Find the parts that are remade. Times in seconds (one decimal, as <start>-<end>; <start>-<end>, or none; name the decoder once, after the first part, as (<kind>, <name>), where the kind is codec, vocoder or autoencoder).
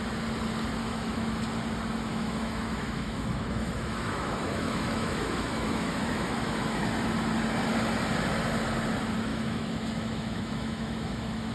0.8-1.4 (autoencoder, DAC-VAE); 2.1-6.8; 9.3-11.5